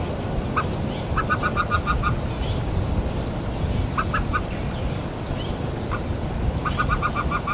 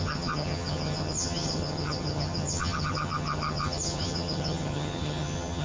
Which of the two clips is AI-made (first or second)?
second